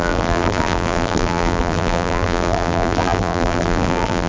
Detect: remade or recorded remade